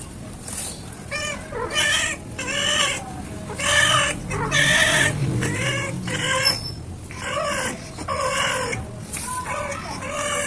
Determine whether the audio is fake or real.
real